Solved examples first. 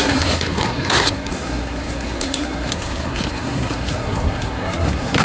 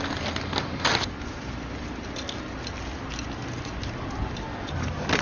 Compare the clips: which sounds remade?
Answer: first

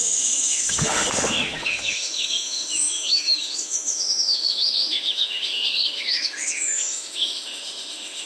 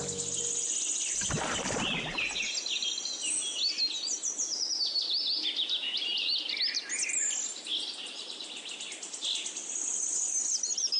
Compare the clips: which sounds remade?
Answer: first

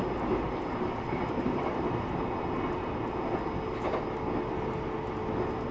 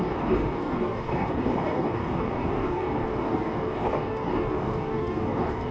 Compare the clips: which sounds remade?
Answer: second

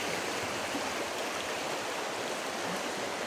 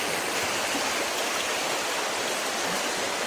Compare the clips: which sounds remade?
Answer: first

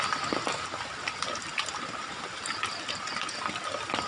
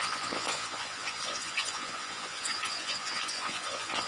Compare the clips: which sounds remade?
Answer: second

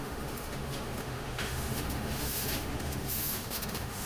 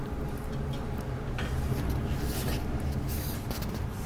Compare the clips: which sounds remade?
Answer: first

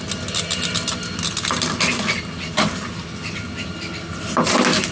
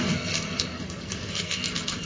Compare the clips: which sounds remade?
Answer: second